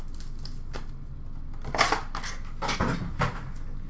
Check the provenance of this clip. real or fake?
real